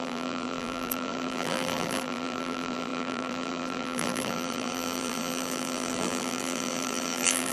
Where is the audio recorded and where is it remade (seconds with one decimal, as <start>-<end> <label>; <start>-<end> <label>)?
0.0-7.5 remade